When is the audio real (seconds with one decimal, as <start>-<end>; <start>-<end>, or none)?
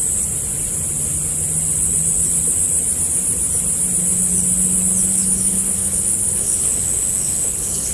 0.0-5.1